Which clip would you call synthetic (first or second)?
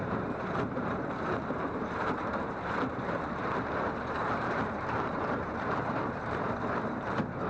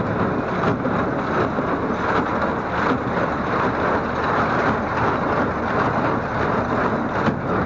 first